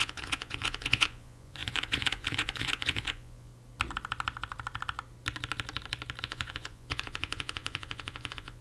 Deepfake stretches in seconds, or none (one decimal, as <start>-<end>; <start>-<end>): 0.0-3.5; 6.2-8.6